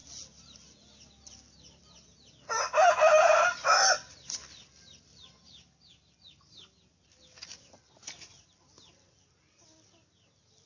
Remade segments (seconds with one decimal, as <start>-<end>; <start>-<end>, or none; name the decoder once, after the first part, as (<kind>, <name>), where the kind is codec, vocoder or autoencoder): none